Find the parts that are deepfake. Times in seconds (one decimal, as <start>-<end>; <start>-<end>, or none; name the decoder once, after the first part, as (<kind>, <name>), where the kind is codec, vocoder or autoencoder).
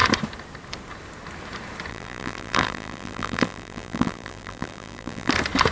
1.9-5.3 (vocoder, BigVGAN v2)